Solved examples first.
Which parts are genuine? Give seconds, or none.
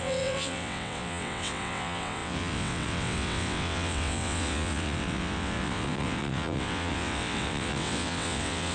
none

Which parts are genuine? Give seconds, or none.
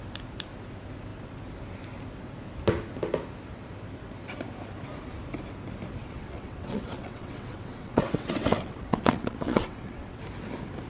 0.0-6.0; 10.2-10.9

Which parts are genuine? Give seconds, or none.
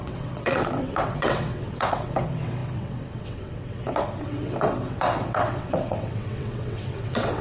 none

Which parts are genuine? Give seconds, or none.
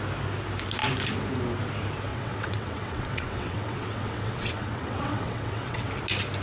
0.0-2.1; 5.9-6.4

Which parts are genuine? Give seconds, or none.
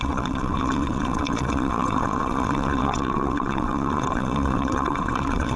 none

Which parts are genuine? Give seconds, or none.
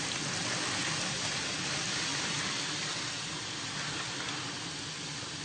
0.0-5.4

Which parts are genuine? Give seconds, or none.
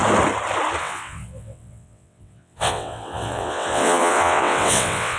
0.0-0.8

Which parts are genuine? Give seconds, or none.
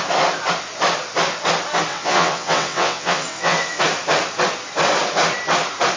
0.0-1.9; 3.8-6.0